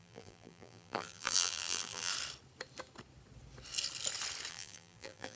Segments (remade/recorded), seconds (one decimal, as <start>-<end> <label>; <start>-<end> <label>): 0.0-2.1 remade; 2.1-4.5 recorded; 4.5-5.4 remade